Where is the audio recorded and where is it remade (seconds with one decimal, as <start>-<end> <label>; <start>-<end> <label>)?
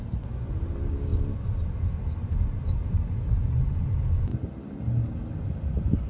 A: 0.0-6.1 recorded